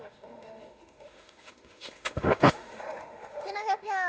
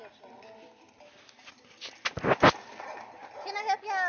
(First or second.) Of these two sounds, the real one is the second